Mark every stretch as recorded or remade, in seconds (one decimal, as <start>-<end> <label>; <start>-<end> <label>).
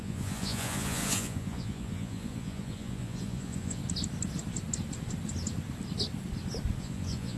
0.0-3.8 remade; 3.8-6.8 recorded; 6.8-7.4 remade